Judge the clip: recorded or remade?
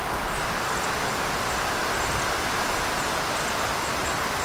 recorded